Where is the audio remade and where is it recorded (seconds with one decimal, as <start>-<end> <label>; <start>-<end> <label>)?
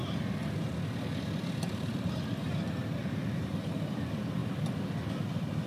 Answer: 0.0-1.6 recorded; 1.6-4.4 remade; 4.4-5.2 recorded; 5.2-5.7 remade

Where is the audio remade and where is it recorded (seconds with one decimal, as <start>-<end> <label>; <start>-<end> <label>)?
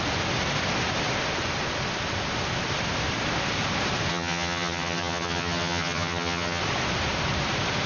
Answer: 0.0-4.1 recorded; 4.1-6.6 remade; 6.6-7.9 recorded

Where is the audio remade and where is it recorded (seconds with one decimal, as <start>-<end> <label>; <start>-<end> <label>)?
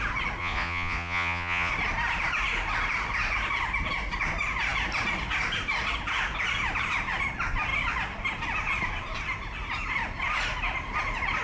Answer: 0.0-0.4 recorded; 0.4-1.7 remade; 1.7-11.4 recorded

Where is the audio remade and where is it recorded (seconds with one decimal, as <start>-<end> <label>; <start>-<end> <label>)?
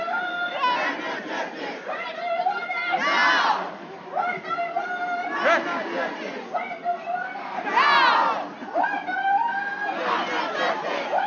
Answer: 0.0-11.3 recorded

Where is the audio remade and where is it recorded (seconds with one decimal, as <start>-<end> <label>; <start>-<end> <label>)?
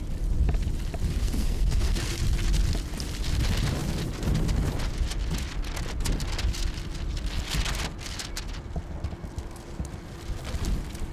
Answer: 0.0-1.2 recorded; 1.2-2.2 remade; 2.2-11.1 recorded